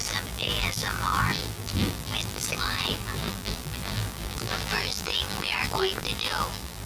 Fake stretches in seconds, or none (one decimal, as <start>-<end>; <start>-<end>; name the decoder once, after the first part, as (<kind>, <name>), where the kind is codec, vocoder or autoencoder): 0.0-6.9 (vocoder, BigVGAN v2)